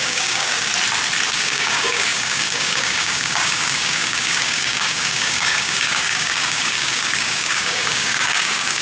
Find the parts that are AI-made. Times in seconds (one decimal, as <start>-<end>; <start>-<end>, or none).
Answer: 0.0-0.7; 1.3-8.8